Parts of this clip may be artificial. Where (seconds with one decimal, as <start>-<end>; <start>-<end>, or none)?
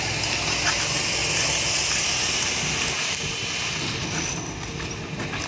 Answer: none